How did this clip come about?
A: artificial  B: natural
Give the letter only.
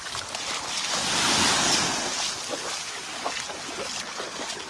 B